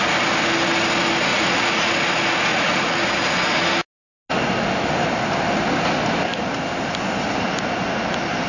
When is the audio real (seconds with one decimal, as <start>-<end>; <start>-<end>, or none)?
0.0-1.3; 1.9-2.5; 3.2-8.5